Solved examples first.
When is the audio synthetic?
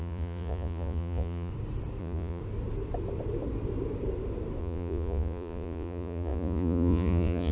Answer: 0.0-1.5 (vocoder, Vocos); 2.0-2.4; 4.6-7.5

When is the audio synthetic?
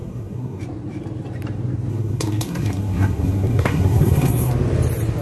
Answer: 0.0-0.6 (codec, SNAC); 1.9-4.5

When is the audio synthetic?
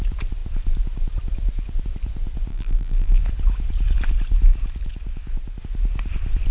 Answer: 2.5-3.2 (vocoder, BigVGAN v2)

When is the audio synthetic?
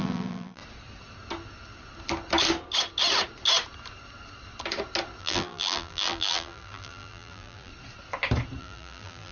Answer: 0.0-0.6 (vocoder, BigVGAN v2); 5.2-7.7; 8.6-9.3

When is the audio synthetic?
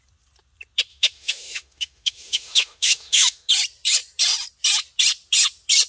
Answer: 0.9-3.5 (autoencoder, DAC-VAE)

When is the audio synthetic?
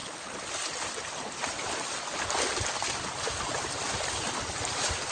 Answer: none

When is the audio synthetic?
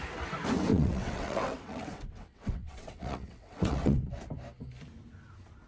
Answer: 0.7-4.1 (vocoder, WaveNeXt)